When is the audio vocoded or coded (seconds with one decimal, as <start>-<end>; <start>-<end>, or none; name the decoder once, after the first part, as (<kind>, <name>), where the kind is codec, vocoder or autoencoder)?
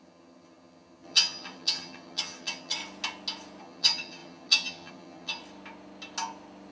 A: 0.0-2.8 (vocoder, HiFi-GAN); 3.6-5.4